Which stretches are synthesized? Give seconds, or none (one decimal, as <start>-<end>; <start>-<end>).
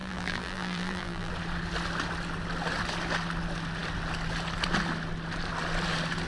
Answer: 0.0-1.3